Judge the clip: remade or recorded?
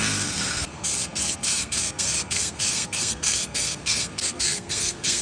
remade